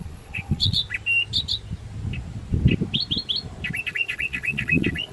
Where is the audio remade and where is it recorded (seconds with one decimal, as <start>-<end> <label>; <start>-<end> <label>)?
0.0-0.8 remade; 0.8-3.9 recorded; 3.9-5.1 remade